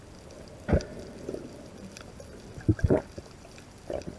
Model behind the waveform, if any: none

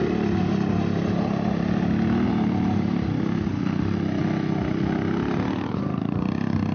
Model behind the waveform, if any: none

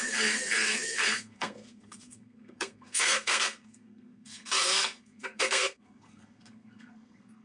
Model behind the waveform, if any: codec, SNAC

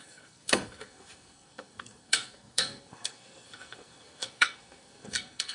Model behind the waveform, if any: codec, SNAC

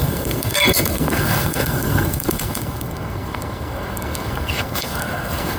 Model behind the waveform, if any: codec, SNAC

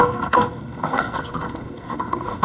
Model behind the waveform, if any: codec, SNAC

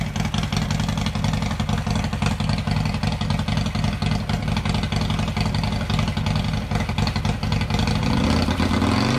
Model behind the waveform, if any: none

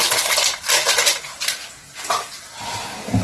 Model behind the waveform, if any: none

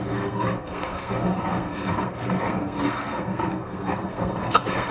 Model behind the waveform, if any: codec, SNAC